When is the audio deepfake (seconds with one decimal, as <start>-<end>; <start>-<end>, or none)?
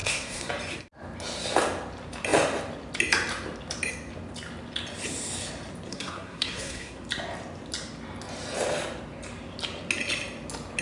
0.0-0.5; 5.9-7.0